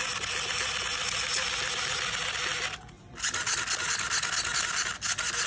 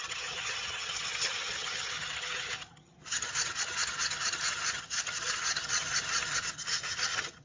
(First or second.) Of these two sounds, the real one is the first